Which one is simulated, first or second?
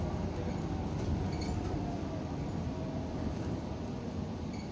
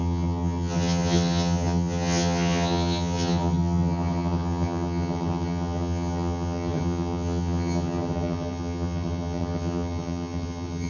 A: second